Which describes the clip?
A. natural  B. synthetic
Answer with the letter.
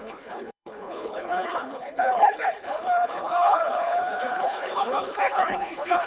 B